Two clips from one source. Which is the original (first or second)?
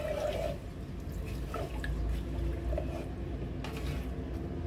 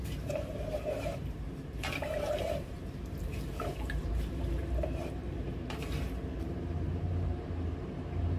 first